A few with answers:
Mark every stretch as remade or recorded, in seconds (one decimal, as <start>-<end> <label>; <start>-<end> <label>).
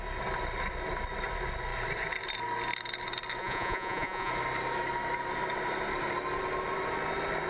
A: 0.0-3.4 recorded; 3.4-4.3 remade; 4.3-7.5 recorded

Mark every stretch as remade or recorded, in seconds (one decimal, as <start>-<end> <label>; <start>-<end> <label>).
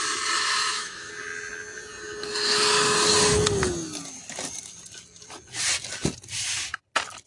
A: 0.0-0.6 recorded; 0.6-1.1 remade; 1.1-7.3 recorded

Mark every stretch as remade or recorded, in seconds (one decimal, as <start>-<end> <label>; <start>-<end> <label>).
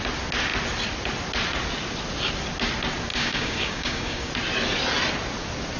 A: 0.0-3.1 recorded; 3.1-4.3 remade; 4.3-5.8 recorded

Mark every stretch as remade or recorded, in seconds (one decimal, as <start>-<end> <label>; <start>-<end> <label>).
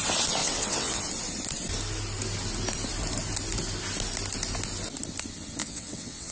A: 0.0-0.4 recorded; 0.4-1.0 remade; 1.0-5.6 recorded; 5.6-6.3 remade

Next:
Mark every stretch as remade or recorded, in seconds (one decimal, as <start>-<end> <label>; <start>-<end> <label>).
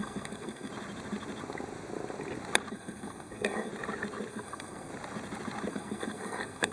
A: 0.0-0.7 remade; 0.7-2.7 recorded; 2.7-3.7 remade; 3.7-4.3 recorded; 4.3-4.9 remade; 4.9-5.7 recorded; 5.7-6.7 remade